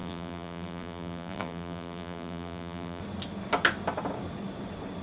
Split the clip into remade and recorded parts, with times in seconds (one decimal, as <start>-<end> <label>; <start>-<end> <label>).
0.0-3.0 remade; 3.0-5.0 recorded